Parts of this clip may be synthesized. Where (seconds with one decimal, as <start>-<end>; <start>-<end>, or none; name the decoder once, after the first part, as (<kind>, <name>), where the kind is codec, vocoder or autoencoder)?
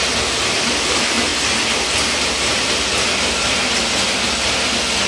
none